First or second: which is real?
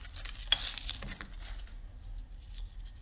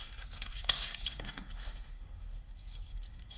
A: first